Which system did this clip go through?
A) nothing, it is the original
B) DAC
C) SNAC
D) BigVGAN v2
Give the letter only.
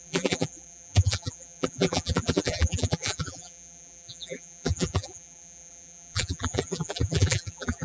D